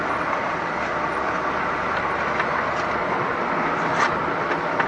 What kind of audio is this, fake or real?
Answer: real